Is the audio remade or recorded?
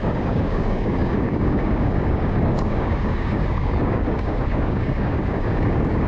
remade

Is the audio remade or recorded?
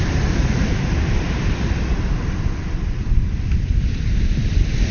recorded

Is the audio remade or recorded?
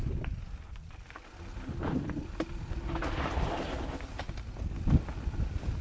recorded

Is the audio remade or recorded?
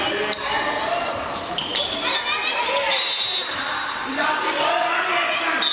recorded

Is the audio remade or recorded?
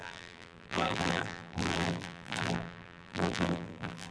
remade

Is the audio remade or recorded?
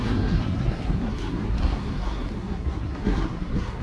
remade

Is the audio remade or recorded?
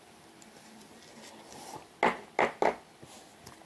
recorded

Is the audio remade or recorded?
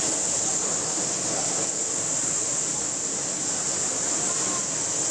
recorded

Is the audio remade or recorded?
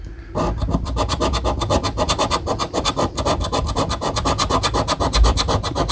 remade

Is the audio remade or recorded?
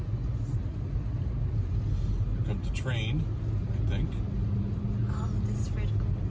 recorded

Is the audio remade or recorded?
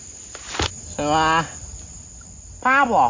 recorded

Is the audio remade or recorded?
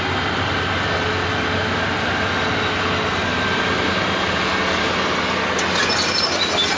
recorded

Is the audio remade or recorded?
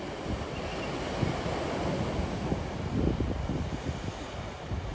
recorded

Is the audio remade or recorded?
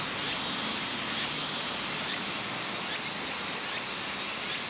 recorded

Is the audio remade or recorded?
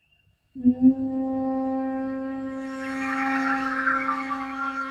remade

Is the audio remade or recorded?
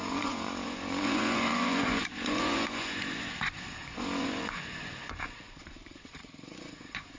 remade